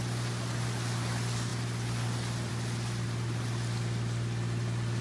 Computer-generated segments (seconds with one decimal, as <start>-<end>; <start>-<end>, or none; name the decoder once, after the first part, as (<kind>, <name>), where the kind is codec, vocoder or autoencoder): none